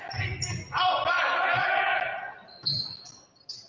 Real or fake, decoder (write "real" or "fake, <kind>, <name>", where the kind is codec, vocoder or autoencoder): real